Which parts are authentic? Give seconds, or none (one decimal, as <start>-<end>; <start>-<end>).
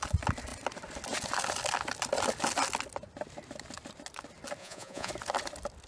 0.0-4.6; 5.1-5.9